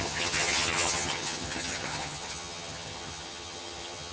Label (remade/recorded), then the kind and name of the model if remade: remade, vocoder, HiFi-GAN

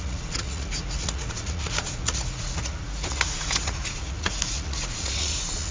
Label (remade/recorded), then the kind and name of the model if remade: remade, vocoder, Vocos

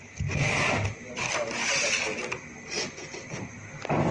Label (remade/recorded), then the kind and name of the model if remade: recorded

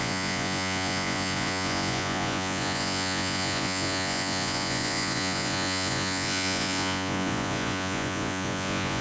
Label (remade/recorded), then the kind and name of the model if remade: remade, vocoder, Vocos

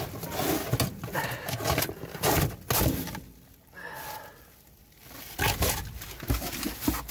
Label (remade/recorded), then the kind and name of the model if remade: recorded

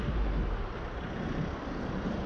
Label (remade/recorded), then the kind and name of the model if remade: recorded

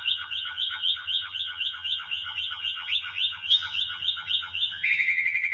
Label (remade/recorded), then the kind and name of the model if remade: remade, vocoder, HiFi-GAN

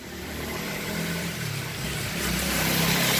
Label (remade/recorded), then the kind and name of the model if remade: remade, vocoder, BigVGAN v2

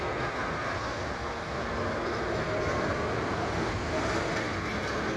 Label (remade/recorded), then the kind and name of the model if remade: recorded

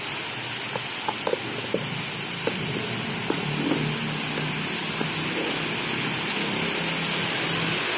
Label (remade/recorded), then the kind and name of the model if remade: recorded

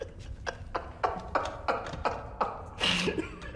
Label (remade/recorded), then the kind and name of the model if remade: recorded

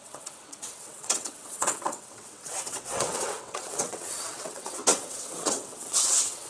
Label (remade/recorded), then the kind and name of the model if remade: remade, vocoder, WaveNeXt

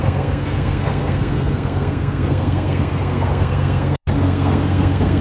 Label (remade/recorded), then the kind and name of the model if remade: remade, codec, SNAC